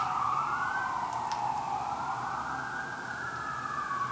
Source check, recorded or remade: recorded